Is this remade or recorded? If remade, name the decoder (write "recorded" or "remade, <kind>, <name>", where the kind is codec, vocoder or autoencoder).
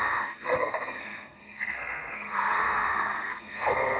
remade, codec, SNAC